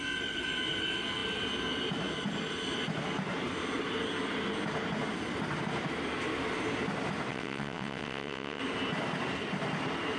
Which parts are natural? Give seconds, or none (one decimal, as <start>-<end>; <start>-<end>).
0.0-7.3; 8.6-10.2